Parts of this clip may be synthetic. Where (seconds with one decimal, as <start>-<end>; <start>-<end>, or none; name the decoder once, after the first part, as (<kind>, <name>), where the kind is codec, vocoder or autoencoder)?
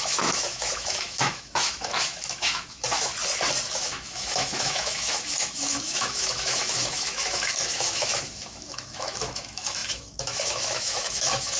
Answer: 0.0-3.1 (autoencoder, DAC-VAE); 3.7-11.6